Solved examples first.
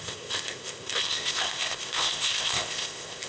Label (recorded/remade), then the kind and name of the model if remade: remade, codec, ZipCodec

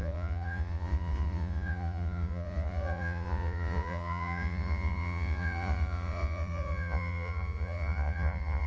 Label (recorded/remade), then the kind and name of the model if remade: remade, vocoder, Vocos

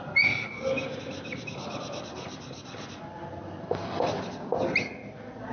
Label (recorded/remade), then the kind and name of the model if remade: recorded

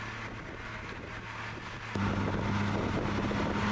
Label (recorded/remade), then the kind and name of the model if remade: recorded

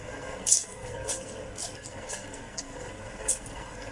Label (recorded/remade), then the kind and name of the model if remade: remade, codec, SNAC